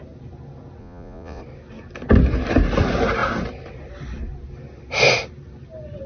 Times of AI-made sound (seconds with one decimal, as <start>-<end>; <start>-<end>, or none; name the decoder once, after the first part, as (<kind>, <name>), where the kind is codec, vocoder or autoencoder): 0.8-1.4 (vocoder, Vocos)